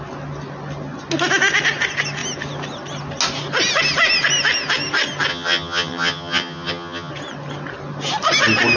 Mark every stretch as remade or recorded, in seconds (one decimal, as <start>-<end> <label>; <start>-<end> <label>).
0.0-5.3 recorded; 5.3-7.1 remade; 7.1-8.8 recorded